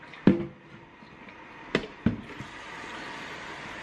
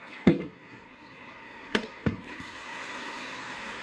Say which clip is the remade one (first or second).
second